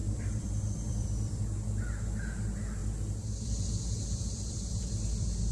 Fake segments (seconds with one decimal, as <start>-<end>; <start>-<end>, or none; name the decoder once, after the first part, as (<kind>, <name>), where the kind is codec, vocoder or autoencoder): 0.0-1.4 (vocoder, BigVGAN v2); 2.8-5.5